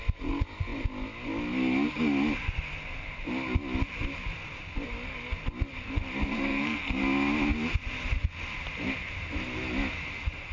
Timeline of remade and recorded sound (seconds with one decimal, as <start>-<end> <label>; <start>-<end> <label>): 0.0-6.2 recorded; 6.2-7.0 remade; 7.0-10.5 recorded